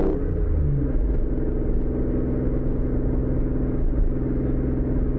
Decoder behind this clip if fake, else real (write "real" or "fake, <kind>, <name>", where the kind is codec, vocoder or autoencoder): real